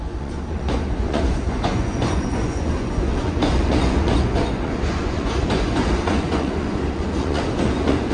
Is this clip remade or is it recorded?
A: remade